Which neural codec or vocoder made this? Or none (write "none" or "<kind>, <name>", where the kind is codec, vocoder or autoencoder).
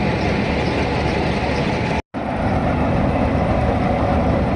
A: none